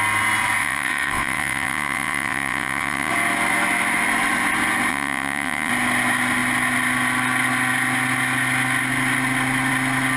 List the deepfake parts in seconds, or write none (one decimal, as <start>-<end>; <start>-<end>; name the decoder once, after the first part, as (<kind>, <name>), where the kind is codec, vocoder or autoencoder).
0.6-3.1 (vocoder, WaveNeXt); 4.9-5.7